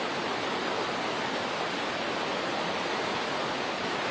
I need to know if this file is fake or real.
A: real